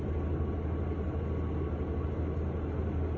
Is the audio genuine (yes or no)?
yes